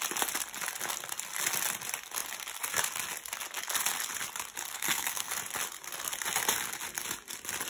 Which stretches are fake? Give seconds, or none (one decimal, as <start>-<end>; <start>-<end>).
4.7-5.3